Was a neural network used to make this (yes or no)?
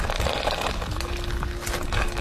no